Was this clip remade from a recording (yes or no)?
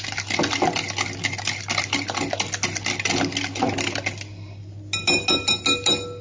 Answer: no